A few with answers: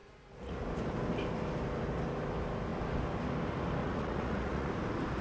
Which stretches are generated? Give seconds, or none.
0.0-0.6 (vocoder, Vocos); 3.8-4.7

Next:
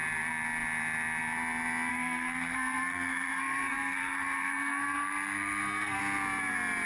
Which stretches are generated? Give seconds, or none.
1.9-6.0 (codec, SNAC)

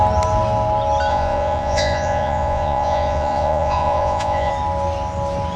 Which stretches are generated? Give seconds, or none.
1.1-4.5 (vocoder, Vocos)

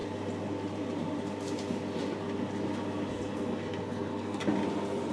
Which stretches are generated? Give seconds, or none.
3.1-4.4 (codec, SNAC)

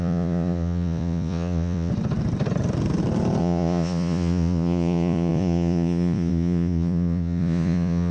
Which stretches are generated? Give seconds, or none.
0.0-1.9 (vocoder, Vocos); 3.4-8.1

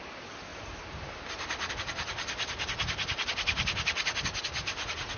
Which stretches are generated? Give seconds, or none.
none

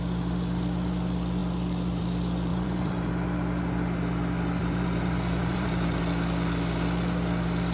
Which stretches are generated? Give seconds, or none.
2.5-3.1 (vocoder, BigVGAN v2); 4.6-6.0